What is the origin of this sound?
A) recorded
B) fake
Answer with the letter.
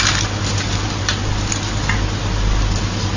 A